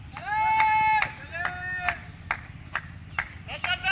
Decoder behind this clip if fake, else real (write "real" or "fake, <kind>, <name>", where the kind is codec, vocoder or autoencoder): real